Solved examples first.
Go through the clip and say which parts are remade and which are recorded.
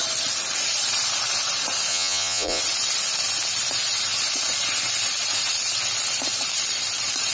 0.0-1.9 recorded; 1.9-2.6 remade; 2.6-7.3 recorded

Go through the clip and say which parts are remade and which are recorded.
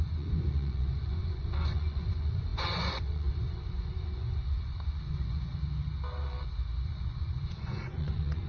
0.0-5.5 remade; 5.5-7.1 recorded; 7.1-8.5 remade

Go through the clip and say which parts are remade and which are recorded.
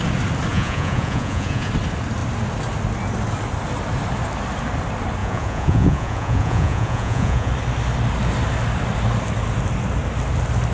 0.0-0.5 recorded; 0.5-1.7 remade; 1.7-5.2 recorded; 5.2-7.5 remade; 7.5-10.7 recorded